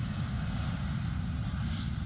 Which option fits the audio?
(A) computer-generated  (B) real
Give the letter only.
B